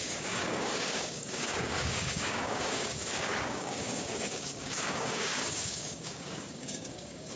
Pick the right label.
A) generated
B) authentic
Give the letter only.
A